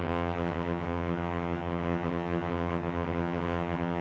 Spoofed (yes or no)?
yes